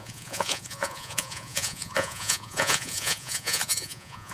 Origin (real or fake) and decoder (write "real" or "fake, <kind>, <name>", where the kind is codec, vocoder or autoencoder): fake, vocoder, Vocos